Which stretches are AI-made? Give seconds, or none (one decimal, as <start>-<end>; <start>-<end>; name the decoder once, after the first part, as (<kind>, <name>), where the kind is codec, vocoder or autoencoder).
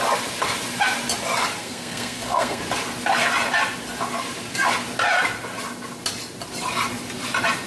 1.6-2.6 (codec, SNAC)